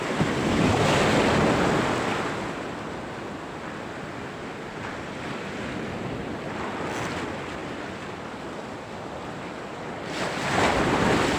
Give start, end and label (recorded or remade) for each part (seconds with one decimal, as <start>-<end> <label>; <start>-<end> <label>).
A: 0.0-7.6 recorded; 7.6-9.3 remade; 9.3-11.4 recorded